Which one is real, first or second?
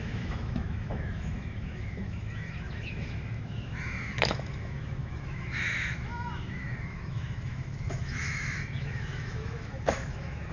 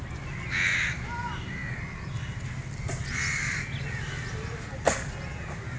second